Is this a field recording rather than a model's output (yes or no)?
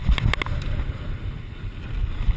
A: yes